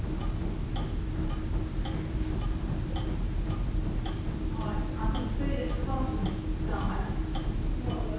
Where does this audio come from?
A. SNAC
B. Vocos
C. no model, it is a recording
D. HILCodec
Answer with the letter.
C